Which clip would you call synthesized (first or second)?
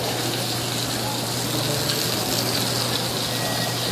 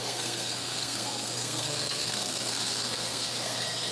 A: second